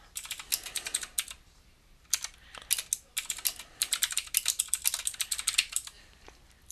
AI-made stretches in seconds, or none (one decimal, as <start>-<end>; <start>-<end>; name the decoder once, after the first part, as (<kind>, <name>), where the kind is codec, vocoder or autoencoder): none